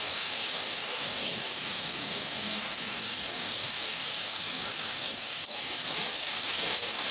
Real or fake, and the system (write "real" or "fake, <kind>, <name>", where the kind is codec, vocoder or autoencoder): fake, codec, DAC